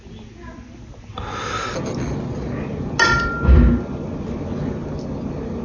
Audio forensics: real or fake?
real